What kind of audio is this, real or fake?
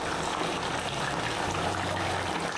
real